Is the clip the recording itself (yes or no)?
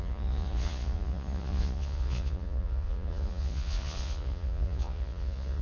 no